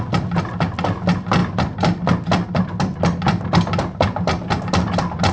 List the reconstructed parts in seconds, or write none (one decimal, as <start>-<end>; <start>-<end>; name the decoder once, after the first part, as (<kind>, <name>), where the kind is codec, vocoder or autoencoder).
none